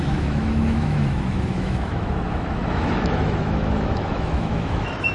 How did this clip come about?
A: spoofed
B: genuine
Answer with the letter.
A